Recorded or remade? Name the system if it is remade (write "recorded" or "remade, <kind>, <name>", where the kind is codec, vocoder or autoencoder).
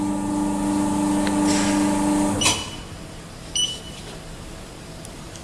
recorded